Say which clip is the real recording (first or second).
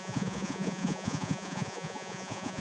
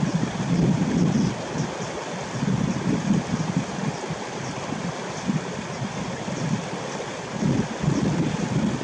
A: second